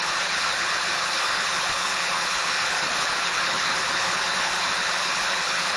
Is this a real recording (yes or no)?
no